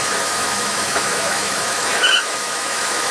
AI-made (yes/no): yes